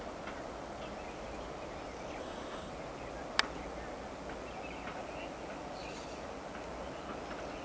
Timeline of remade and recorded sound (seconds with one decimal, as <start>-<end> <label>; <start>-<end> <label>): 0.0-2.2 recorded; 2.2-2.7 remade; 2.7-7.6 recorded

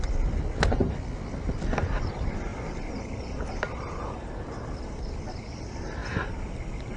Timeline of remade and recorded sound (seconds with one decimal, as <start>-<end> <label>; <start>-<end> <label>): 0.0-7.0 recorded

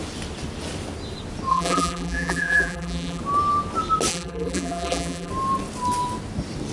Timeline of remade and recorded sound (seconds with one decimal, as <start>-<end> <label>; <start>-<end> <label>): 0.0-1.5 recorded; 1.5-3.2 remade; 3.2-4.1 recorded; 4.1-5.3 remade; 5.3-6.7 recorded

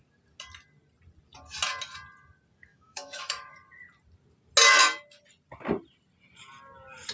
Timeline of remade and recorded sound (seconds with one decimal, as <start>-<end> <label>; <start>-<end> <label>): 0.0-2.7 recorded; 2.7-3.5 remade; 3.5-7.1 recorded

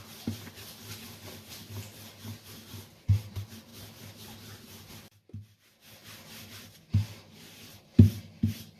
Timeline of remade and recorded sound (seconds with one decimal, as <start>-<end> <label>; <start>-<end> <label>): 0.0-8.8 recorded

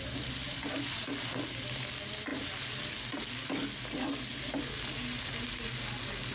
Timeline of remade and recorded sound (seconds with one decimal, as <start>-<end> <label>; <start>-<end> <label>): 0.0-6.3 recorded

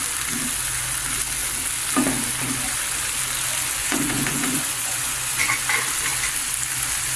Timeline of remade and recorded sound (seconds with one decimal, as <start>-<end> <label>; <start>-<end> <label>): 0.0-3.8 recorded; 3.8-5.6 remade; 5.6-7.2 recorded

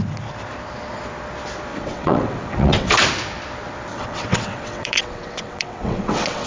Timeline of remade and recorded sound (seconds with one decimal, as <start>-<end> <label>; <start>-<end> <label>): 0.0-1.7 recorded; 1.7-2.9 remade; 2.9-3.9 recorded; 3.9-6.5 remade